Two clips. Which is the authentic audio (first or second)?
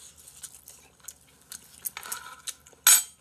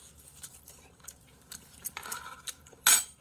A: first